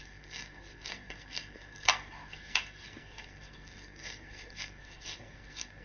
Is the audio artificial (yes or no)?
yes